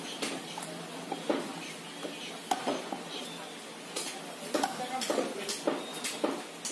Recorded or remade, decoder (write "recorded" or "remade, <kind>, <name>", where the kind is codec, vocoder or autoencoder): recorded